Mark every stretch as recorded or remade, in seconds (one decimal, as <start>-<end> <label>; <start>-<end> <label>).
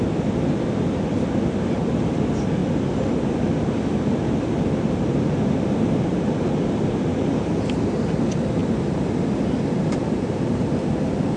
0.0-2.6 remade; 2.6-3.2 recorded; 3.2-11.4 remade